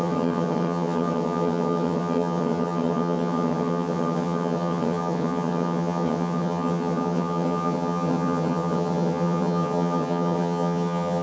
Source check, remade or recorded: remade